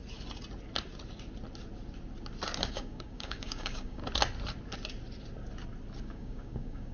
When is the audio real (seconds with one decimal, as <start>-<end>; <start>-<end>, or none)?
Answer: 0.0-2.7; 4.0-6.0

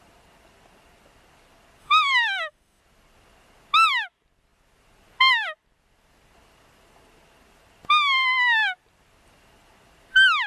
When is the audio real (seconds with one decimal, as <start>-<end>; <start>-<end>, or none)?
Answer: 0.0-1.8; 2.8-10.5

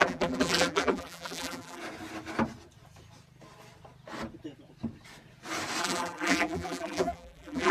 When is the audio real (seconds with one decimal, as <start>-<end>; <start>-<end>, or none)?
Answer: 1.8-5.8

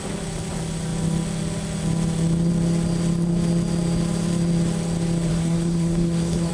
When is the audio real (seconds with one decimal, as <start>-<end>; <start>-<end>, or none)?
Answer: 0.0-5.3

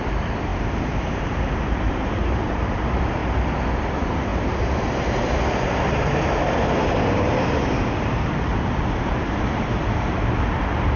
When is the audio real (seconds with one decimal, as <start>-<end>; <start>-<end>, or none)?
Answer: 3.2-3.8

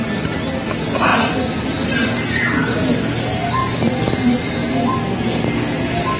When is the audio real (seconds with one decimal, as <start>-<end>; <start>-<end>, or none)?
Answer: 0.0-6.2